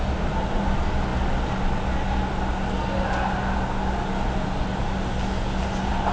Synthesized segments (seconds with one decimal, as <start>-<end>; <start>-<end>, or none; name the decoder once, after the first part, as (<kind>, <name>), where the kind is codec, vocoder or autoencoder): none